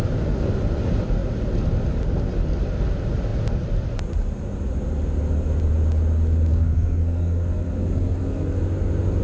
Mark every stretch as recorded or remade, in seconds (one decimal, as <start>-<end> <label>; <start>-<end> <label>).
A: 0.0-6.5 recorded; 6.5-8.6 remade; 8.6-9.2 recorded